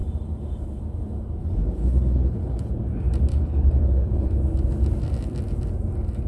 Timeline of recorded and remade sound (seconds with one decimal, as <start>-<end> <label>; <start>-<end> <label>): 0.0-1.4 recorded; 1.4-2.7 remade; 2.7-3.3 recorded; 3.3-4.3 remade; 4.3-6.3 recorded